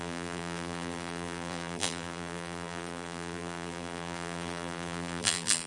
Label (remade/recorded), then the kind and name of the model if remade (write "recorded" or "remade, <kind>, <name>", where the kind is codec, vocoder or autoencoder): remade, vocoder, BigVGAN v2